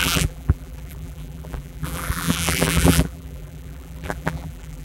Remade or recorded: remade